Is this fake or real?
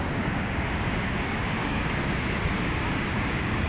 fake